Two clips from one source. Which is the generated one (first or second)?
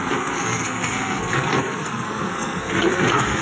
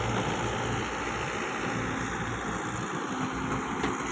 first